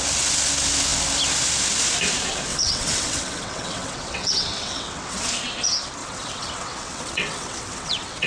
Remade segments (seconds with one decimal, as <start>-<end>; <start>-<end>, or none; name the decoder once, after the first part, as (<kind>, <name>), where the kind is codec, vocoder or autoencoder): 2.5-5.3 (vocoder, WaveNeXt); 6.0-8.3

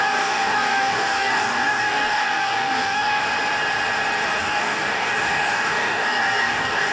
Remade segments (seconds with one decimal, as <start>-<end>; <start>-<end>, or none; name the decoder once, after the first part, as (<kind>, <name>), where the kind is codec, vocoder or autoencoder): 0.0-3.2 (codec, DAC); 4.4-6.9

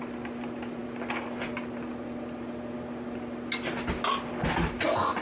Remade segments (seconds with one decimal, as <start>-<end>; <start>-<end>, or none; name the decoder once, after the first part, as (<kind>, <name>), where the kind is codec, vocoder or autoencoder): none

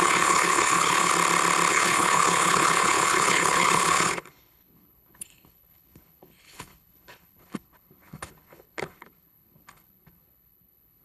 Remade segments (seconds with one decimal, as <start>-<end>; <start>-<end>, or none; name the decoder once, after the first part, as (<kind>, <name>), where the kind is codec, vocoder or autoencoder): 0.0-1.1 (codec, HILCodec); 1.7-11.0